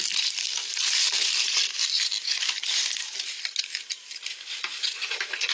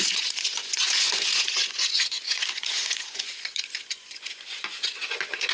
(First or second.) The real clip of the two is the first